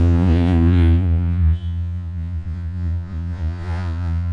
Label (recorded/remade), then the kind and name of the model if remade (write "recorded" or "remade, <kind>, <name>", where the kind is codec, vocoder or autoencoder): remade, vocoder, Vocos